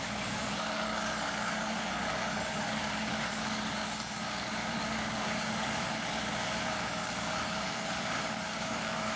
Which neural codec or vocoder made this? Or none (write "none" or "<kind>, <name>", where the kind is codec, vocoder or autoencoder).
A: codec, DAC